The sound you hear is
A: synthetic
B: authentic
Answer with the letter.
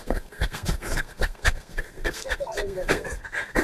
A